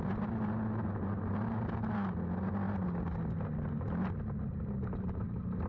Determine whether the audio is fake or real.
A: real